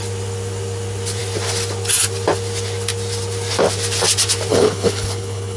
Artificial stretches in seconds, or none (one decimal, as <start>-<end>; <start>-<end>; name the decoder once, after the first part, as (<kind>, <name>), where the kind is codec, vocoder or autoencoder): 4.5-5.6 (codec, HILCodec)